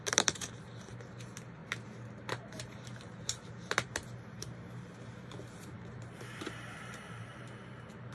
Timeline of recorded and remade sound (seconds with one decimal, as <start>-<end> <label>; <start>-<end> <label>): 0.0-8.1 remade